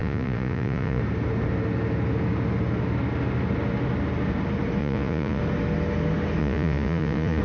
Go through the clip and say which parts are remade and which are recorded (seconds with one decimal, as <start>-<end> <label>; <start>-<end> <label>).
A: 0.0-1.0 remade; 1.0-4.8 recorded; 4.8-5.4 remade; 5.4-6.4 recorded; 6.4-7.4 remade